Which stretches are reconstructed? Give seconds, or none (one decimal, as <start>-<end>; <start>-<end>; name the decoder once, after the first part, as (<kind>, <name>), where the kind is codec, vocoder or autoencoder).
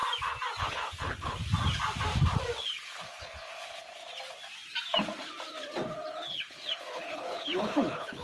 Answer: 0.6-1.4 (codec, HILCodec); 2.6-4.0; 6.1-8.2